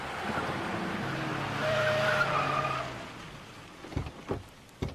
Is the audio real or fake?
real